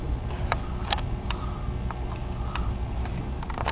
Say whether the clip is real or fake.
real